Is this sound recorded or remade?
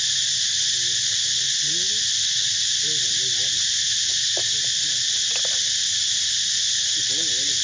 recorded